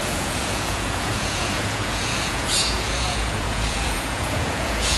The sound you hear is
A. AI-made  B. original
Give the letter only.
A